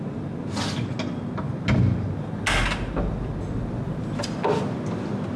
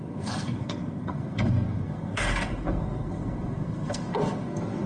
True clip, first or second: first